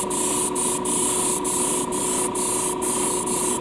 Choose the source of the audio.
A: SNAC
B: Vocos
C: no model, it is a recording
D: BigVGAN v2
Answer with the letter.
C